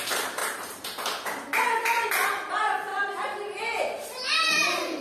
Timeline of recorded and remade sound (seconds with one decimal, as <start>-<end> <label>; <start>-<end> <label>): 0.0-2.9 recorded; 2.9-3.6 remade; 3.6-5.0 recorded